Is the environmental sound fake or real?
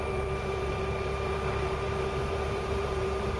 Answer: fake